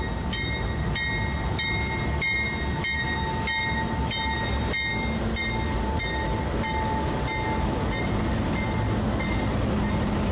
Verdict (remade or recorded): recorded